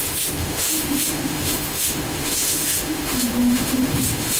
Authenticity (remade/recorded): remade